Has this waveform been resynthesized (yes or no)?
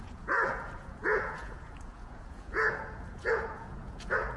yes